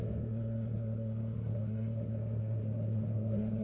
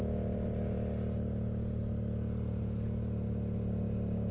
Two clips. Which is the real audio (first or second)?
second